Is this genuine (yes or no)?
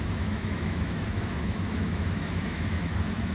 no